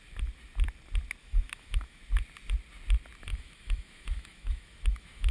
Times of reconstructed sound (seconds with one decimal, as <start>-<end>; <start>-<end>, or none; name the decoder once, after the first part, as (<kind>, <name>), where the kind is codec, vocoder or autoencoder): 1.2-2.0 (autoencoder, DAC-VAE); 3.3-5.3